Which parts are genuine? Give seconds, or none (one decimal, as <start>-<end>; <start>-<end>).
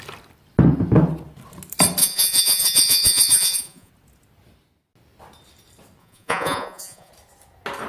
0.0-2.0; 3.9-6.0; 7.1-7.9